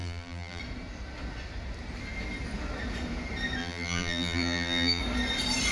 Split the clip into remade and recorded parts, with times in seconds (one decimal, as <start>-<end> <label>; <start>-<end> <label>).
0.0-0.6 remade; 0.6-3.6 recorded; 3.6-5.0 remade; 5.0-5.7 recorded

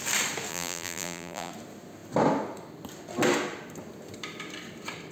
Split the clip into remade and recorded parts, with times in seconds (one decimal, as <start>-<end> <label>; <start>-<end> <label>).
0.0-0.5 recorded; 0.5-1.5 remade; 1.5-5.1 recorded

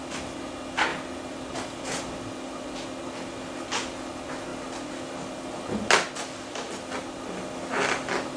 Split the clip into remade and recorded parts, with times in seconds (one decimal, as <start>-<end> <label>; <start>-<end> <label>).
0.0-8.4 recorded

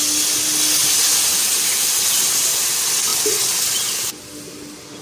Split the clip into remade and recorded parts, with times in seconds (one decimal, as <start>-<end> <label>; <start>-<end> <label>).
0.0-5.0 recorded